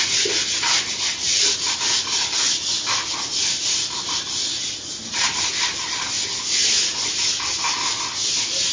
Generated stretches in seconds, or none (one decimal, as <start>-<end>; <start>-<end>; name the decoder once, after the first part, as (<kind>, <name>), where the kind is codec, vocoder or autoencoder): none